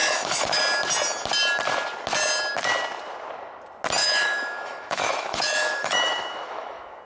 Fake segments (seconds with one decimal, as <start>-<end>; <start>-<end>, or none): 0.0-0.6; 4.0-7.0